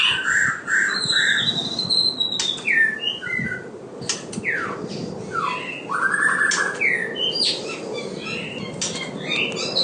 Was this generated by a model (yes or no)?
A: no